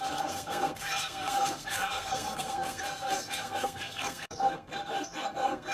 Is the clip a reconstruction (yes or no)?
yes